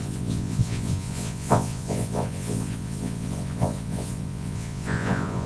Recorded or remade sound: remade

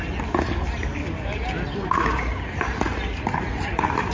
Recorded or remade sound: recorded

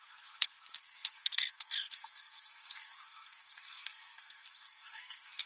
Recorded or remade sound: remade